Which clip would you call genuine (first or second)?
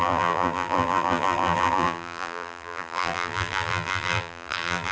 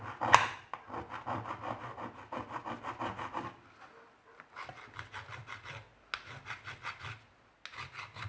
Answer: second